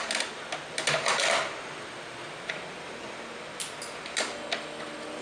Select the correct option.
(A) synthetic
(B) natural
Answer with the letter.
B